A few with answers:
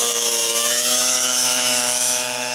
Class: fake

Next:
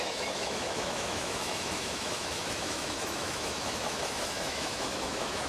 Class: fake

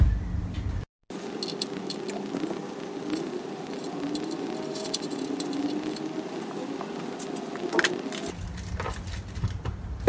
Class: real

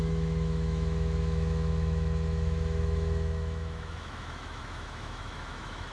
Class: fake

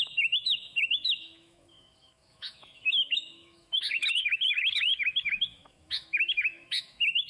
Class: fake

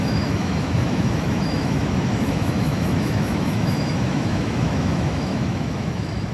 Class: fake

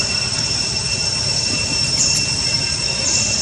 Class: real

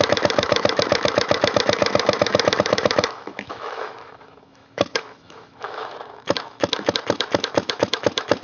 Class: fake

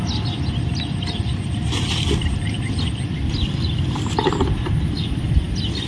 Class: real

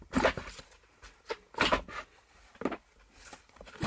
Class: real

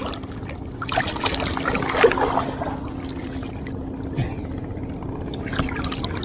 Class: real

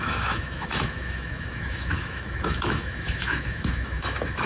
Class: fake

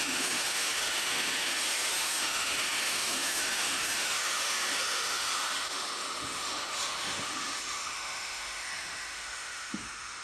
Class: fake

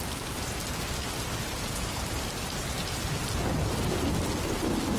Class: real